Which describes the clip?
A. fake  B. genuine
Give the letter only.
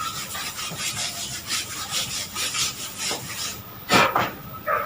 B